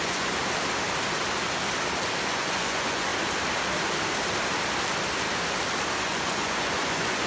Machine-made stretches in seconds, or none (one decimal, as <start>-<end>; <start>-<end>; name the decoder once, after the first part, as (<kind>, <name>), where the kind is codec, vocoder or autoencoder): 0.0-0.4 (vocoder, Vocos); 2.3-3.1; 6.0-7.3

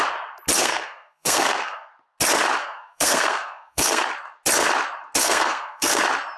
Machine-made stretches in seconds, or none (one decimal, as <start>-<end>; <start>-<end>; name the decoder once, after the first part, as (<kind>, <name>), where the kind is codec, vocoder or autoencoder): 0.6-1.9 (codec, SNAC); 2.6-4.0; 5.2-6.0

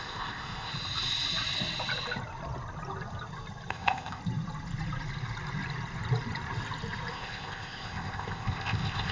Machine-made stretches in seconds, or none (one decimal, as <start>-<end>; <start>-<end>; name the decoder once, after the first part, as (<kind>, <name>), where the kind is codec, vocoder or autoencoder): 0.0-0.7 (codec, ZipCodec); 3.7-4.2; 7.1-9.1

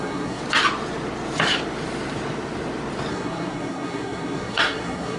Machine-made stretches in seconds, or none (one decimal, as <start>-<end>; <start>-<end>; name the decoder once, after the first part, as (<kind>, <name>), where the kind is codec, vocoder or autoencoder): 0.0-0.4 (codec, SNAC); 3.1-5.2